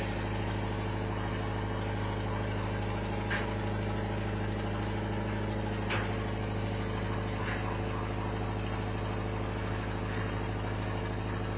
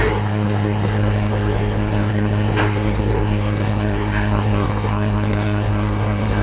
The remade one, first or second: second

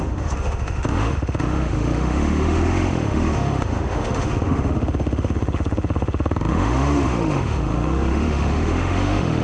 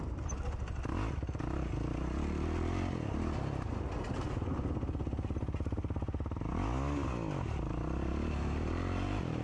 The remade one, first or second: first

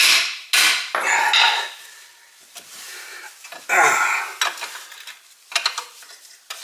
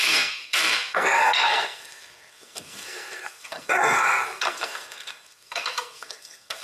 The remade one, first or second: second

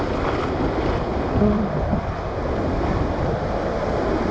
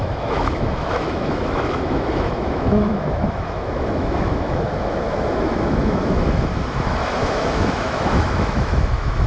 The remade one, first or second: second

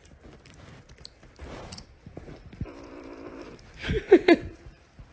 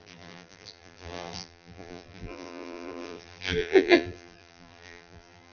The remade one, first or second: second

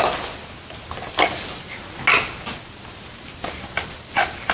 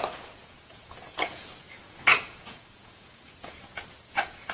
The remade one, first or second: second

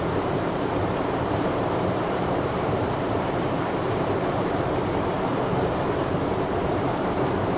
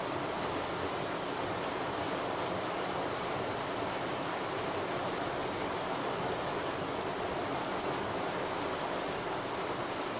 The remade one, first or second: first